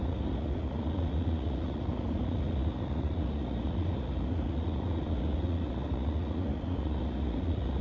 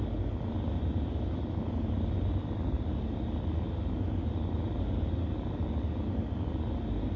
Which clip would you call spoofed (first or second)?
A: first